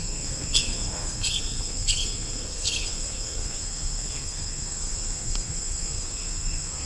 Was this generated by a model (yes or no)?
yes